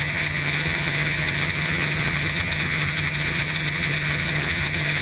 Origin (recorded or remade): remade